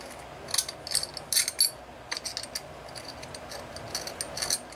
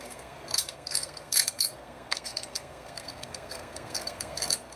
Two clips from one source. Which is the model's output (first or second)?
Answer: second